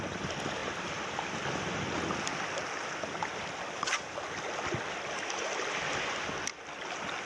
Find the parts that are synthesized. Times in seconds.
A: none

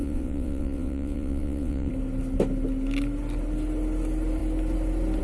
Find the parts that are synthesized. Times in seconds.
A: 0.0-1.9 (vocoder, WaveNeXt)

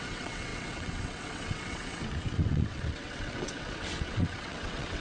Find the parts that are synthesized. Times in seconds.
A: 0.0-5.0 (vocoder, WaveNeXt)

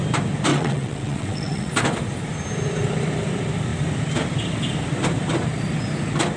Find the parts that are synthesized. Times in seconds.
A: 0.5-1.7 (vocoder, WaveNeXt)

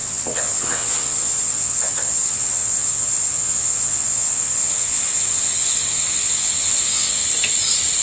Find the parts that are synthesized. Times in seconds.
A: 0.0-7.2 (vocoder, WaveNeXt)